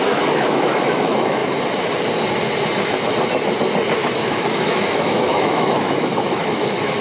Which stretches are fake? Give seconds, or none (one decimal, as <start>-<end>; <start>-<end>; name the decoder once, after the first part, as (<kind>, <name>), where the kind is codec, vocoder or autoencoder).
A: 0.0-1.4 (autoencoder, DAC-VAE); 4.2-7.0